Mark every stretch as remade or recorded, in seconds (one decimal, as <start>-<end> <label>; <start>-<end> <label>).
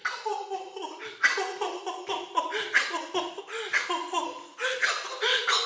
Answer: 0.0-5.7 recorded